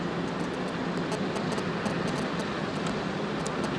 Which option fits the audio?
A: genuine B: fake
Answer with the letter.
A